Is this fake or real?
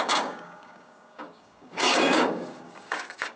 fake